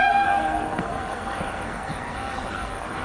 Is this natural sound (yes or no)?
no